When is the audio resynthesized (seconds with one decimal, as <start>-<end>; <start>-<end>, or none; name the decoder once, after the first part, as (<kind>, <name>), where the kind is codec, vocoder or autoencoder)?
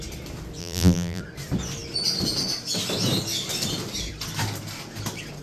0.6-1.2 (vocoder, BigVGAN v2)